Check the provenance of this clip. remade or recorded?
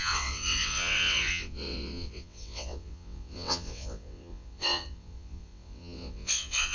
remade